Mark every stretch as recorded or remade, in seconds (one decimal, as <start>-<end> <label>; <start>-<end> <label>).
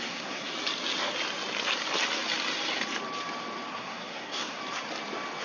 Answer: 0.0-0.5 remade; 0.5-3.7 recorded; 3.7-4.6 remade; 4.6-5.4 recorded